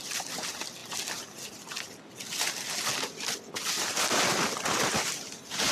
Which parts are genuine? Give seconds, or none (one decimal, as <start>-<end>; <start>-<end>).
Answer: 0.0-5.7